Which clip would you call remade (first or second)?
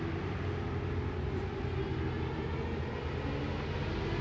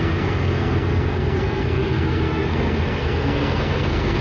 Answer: second